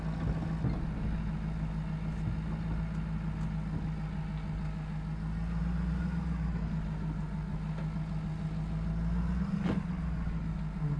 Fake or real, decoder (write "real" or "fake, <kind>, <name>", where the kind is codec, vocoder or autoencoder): real